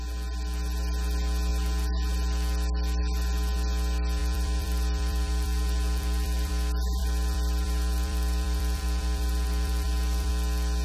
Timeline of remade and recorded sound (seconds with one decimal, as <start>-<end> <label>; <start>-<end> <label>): 0.0-4.2 recorded; 4.2-6.5 remade; 6.5-7.0 recorded; 7.0-10.3 remade; 10.3-10.8 recorded